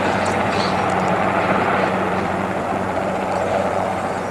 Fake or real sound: fake